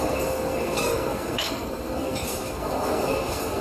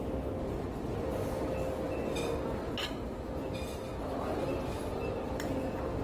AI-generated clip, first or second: first